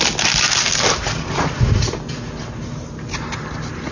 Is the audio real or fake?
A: real